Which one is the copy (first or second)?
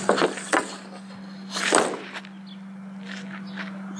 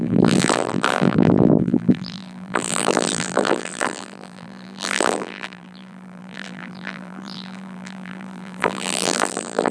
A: second